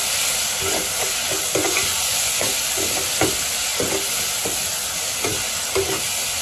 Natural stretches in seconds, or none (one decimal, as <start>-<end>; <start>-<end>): 0.0-1.6; 2.5-6.4